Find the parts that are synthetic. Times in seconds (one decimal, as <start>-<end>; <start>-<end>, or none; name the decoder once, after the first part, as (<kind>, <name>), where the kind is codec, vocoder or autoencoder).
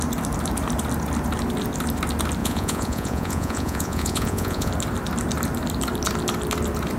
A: 2.4-4.7 (vocoder, Vocos)